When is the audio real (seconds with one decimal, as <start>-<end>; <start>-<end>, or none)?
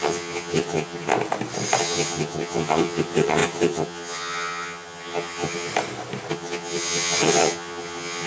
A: 1.1-1.8; 5.7-6.3